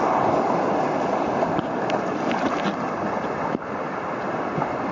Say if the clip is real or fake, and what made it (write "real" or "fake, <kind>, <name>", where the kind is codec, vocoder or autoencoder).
real